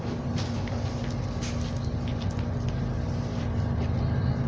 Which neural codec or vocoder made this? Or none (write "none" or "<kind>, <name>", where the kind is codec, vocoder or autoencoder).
none